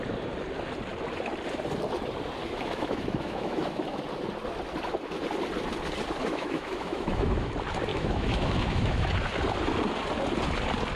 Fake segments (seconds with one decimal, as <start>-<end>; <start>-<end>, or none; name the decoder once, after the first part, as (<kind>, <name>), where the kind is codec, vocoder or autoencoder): 2.4-4.0 (autoencoder, DAC-VAE); 6.2-7.5; 7.9-9.1

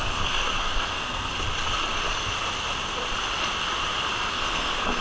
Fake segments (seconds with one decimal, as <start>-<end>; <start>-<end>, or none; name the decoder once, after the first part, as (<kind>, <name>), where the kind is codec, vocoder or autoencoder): 0.0-1.3 (codec, SNAC); 4.3-5.0

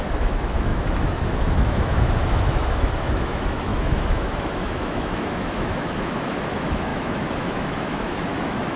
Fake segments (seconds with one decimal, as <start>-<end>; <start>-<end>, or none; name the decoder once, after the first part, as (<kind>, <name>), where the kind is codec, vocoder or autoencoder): 0.0-8.8 (autoencoder, DAC-VAE)

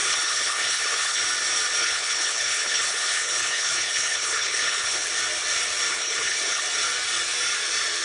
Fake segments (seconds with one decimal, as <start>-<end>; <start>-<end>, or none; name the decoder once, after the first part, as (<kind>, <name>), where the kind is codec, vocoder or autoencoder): 0.0-1.2 (codec, HILCodec); 1.8-5.1; 5.9-6.6

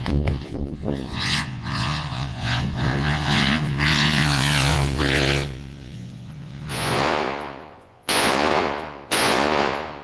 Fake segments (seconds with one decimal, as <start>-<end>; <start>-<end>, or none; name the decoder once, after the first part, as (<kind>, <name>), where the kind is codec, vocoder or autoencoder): 0.0-10.0 (vocoder, Vocos)